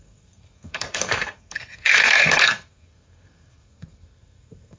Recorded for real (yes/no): no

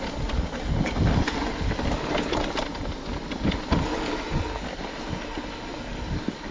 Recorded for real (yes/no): yes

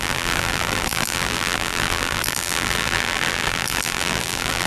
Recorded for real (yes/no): no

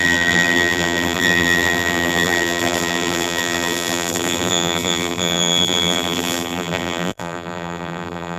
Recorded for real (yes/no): no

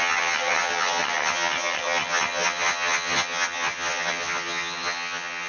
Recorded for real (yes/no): no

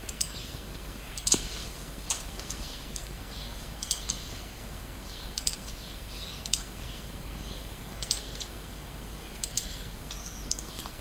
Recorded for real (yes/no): no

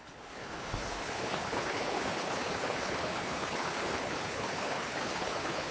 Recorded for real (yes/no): no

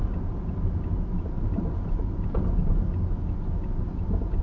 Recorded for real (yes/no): yes